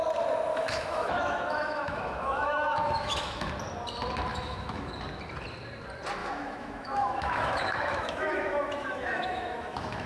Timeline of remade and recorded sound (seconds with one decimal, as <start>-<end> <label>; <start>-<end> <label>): 0.0-0.5 recorded; 0.5-3.5 remade; 3.5-4.3 recorded; 4.3-4.9 remade; 4.9-6.2 recorded; 6.2-10.1 remade